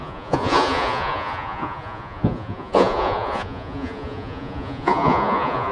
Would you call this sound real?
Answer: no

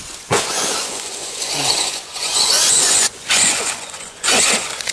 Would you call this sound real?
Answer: no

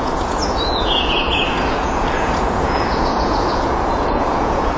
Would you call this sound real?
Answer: no